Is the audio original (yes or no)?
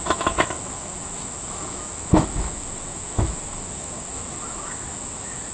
no